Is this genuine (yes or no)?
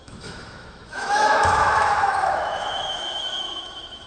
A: no